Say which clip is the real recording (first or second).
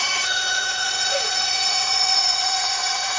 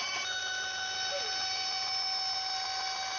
second